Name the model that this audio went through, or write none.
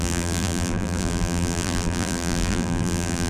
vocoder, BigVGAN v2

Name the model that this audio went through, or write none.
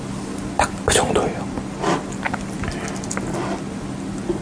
none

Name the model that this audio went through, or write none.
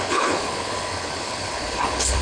codec, HILCodec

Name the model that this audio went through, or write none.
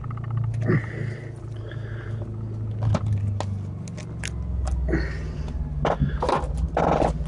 none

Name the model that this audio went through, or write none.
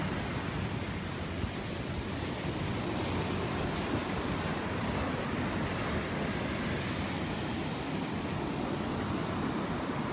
none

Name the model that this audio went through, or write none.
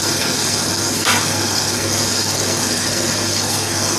codec, SNAC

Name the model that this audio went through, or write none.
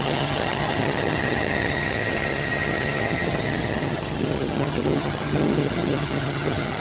vocoder, HiFi-GAN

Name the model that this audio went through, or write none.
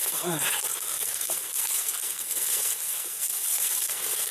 codec, SNAC